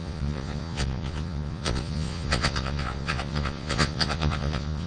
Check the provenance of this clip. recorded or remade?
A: remade